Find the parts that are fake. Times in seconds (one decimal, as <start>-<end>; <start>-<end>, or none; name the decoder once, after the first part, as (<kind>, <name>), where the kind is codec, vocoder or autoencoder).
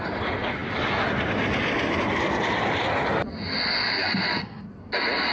none